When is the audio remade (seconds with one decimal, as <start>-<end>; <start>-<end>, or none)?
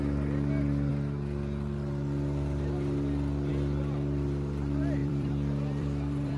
5.0-6.4